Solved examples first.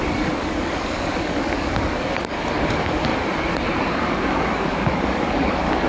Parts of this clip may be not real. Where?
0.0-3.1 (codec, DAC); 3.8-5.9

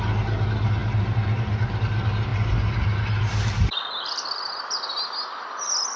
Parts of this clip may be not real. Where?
none

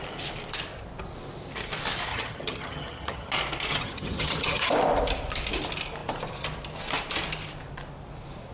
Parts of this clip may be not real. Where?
2.1-3.3 (vocoder, HiFi-GAN); 3.7-4.7

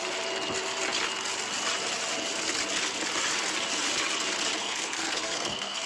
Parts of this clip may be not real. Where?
4.6-5.9 (codec, SNAC)

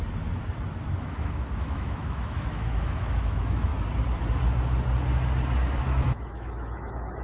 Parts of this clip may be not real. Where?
1.0-3.7 (autoencoder, DAC-VAE); 5.8-7.2

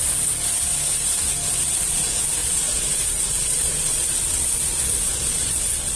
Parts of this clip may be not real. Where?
1.6-6.0 (vocoder, Vocos)

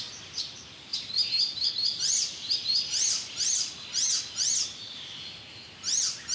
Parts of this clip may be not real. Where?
0.9-4.3 (vocoder, BigVGAN v2)